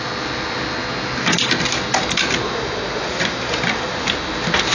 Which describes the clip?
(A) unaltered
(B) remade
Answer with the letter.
A